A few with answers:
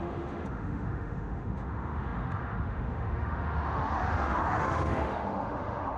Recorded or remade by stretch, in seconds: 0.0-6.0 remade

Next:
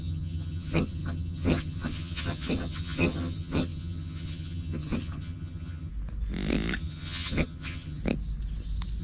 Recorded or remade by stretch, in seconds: 0.0-5.9 remade; 5.9-6.8 recorded; 6.8-8.0 remade; 8.0-9.0 recorded

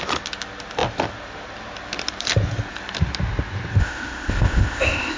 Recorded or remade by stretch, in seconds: 0.0-3.8 recorded; 3.8-5.2 remade

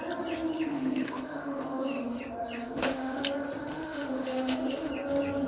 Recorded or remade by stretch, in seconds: 0.0-0.7 recorded; 0.7-2.2 remade; 2.2-2.6 recorded; 2.6-3.2 remade; 3.2-3.7 recorded; 3.7-4.9 remade; 4.9-5.5 recorded

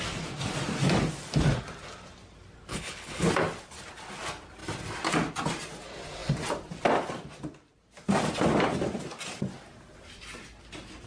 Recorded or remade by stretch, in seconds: 0.0-2.7 recorded; 2.7-3.3 remade; 3.3-11.1 recorded

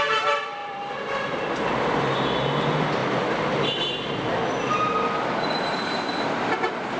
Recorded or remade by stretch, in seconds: 0.0-0.6 recorded; 0.6-1.7 remade; 1.7-3.0 recorded; 3.0-6.0 remade; 6.0-7.0 recorded

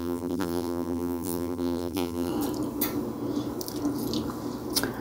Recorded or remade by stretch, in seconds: 0.0-2.3 remade; 2.3-5.0 recorded

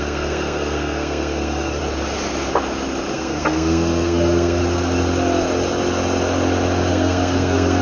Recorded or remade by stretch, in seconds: 0.0-1.8 remade; 1.8-3.1 recorded; 3.1-4.6 remade; 4.6-6.9 recorded; 6.9-7.8 remade